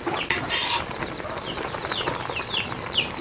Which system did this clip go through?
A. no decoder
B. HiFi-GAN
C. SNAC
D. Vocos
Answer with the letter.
A